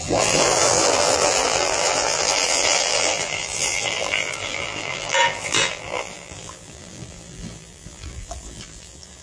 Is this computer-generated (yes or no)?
yes